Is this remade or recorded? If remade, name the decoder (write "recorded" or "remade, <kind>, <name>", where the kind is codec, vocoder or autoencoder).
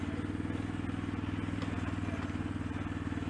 recorded